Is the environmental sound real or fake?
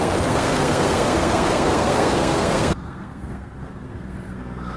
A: fake